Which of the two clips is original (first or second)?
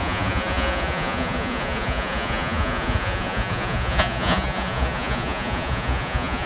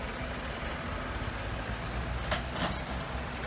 second